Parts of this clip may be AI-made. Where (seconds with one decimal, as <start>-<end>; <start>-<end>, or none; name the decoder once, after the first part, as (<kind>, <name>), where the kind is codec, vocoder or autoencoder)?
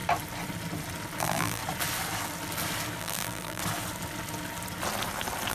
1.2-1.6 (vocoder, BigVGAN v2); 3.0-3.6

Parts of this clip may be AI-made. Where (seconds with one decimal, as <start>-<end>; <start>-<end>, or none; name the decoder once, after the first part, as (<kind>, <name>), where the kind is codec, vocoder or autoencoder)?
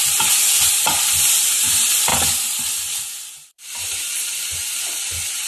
0.0-5.5 (vocoder, BigVGAN v2)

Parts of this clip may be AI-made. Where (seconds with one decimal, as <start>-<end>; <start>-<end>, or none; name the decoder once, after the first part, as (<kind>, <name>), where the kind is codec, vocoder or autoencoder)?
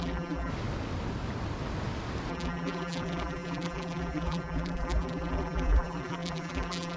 0.0-0.5 (vocoder, BigVGAN v2); 2.3-7.0